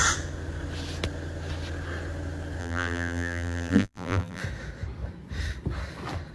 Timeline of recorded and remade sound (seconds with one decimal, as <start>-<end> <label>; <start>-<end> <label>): 0.0-2.6 recorded; 2.6-4.4 remade; 4.4-6.3 recorded